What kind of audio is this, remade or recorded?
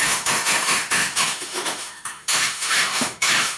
remade